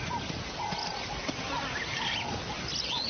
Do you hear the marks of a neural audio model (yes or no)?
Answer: no